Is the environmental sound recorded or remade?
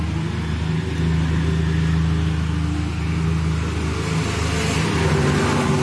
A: recorded